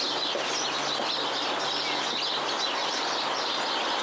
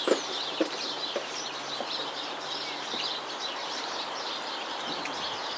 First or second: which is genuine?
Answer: first